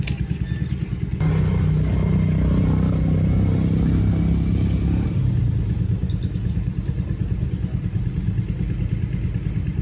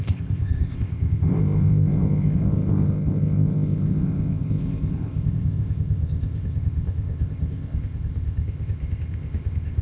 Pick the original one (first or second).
first